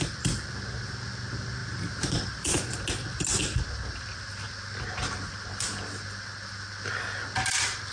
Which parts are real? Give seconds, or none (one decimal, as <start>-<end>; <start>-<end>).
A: 0.0-1.6; 2.6-3.3; 4.5-7.9

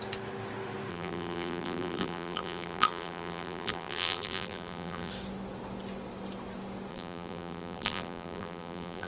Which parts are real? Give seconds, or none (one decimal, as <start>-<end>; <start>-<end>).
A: 0.0-0.9; 5.1-6.9